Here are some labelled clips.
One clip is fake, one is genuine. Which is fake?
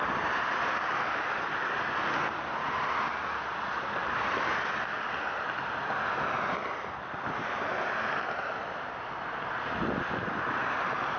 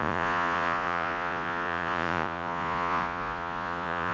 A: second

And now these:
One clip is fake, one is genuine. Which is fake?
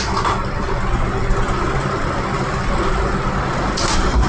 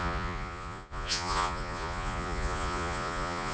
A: second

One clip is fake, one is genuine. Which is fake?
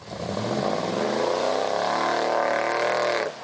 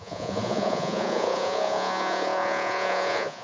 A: second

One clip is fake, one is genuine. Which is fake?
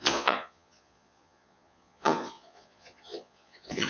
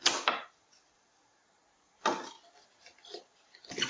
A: first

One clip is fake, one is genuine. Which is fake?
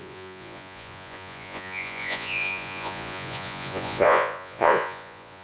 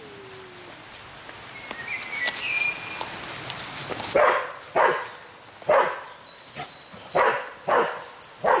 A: first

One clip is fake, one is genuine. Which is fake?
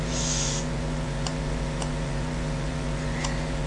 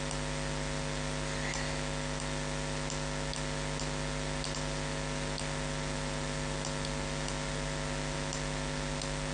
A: first